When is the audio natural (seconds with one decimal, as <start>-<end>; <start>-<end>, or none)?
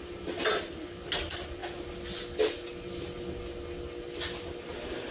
0.0-5.1